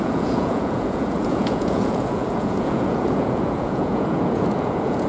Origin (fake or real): fake